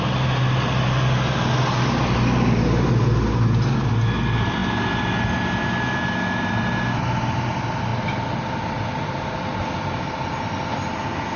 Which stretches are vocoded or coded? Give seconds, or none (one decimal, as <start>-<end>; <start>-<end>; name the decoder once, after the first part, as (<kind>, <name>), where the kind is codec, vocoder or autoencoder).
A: none